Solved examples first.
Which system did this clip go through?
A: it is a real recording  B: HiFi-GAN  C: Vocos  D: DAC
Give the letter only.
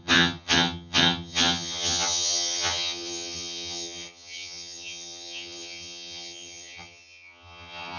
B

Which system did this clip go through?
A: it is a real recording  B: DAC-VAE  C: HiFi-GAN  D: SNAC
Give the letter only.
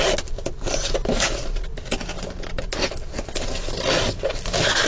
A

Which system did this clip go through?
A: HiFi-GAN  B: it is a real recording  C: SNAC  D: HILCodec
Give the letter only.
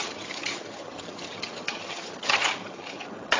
A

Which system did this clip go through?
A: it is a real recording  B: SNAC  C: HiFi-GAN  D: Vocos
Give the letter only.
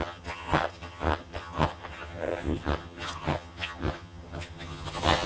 C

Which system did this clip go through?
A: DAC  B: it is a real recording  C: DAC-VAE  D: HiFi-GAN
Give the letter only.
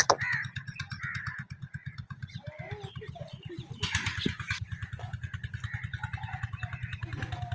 B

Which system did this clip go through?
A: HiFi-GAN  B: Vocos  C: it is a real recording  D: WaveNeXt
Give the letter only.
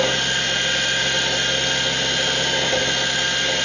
C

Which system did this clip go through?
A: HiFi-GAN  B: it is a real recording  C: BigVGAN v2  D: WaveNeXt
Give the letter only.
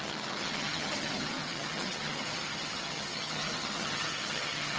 A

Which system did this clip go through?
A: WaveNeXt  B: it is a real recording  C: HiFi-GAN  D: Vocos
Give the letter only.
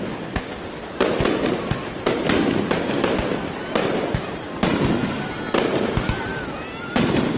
B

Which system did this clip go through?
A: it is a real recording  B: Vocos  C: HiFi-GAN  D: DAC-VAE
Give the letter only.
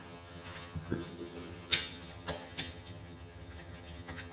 C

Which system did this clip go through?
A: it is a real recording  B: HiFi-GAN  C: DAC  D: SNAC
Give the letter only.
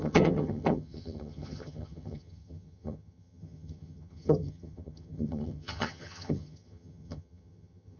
B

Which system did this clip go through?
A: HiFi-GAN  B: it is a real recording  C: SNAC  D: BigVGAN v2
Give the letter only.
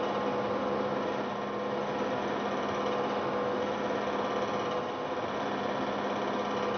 B